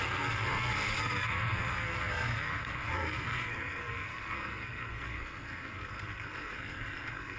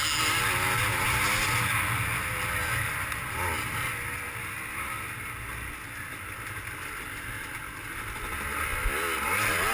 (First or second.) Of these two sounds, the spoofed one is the first